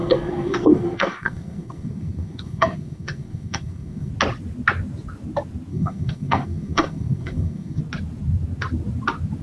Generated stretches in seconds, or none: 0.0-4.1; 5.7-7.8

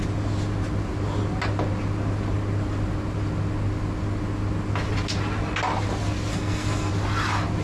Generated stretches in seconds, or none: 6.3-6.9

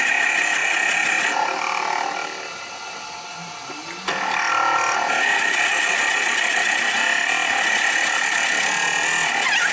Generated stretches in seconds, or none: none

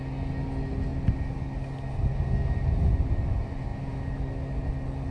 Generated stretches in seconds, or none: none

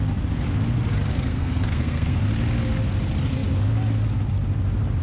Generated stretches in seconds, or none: 1.1-2.2

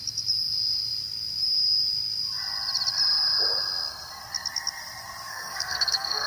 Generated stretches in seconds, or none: 5.3-6.3